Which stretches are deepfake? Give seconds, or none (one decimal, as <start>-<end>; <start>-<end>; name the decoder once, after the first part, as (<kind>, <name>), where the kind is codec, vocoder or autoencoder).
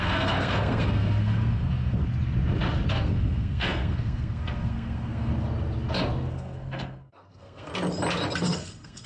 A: 0.0-2.0 (codec, SNAC); 2.9-5.3; 6.3-7.7; 8.4-9.1